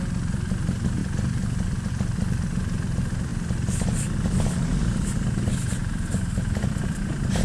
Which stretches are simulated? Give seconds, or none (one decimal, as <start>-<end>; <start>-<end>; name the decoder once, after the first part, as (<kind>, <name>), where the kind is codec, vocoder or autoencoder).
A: 5.8-7.4 (vocoder, BigVGAN v2)